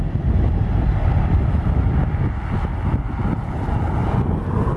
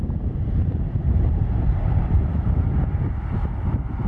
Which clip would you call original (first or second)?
first